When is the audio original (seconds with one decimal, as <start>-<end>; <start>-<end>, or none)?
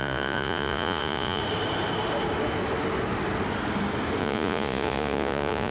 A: 1.4-4.2